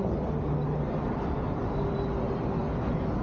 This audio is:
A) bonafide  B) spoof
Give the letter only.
A